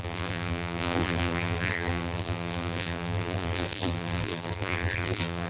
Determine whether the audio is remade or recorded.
remade